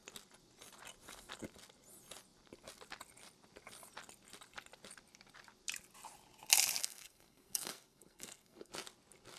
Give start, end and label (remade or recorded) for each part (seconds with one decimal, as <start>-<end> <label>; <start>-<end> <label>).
0.0-6.8 recorded; 6.8-8.7 remade; 8.7-9.4 recorded